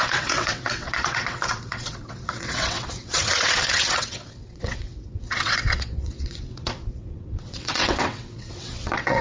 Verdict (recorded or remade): remade